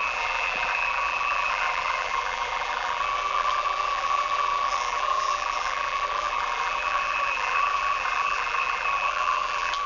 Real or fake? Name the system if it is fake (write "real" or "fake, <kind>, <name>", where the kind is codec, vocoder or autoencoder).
fake, vocoder, BigVGAN v2